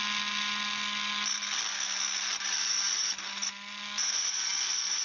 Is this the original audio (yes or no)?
yes